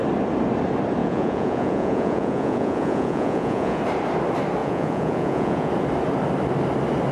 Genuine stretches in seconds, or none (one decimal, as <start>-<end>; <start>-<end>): 0.0-1.0; 3.8-4.6; 5.7-7.1